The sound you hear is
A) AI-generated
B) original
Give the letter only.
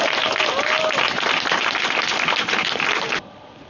B